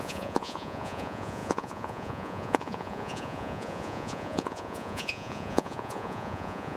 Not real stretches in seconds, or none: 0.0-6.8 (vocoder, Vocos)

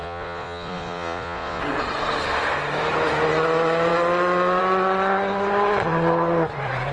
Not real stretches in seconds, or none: 0.0-1.6 (vocoder, Vocos)

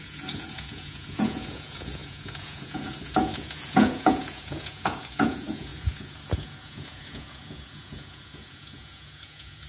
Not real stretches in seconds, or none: 0.0-9.7 (vocoder, Vocos)

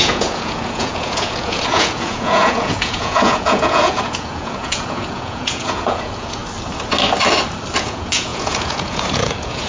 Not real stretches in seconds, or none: 0.0-6.4 (vocoder, Vocos); 7.8-9.7